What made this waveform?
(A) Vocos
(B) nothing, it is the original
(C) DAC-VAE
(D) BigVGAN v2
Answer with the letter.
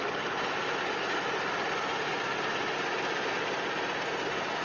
B